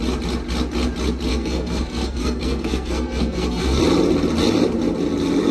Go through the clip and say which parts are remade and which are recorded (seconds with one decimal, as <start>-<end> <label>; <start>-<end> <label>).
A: 0.0-1.3 recorded; 1.3-3.8 remade; 3.8-5.5 recorded